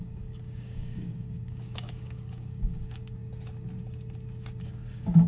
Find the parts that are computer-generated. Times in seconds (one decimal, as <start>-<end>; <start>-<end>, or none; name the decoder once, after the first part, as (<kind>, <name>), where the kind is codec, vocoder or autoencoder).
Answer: 0.0-3.2 (codec, DAC); 4.6-5.3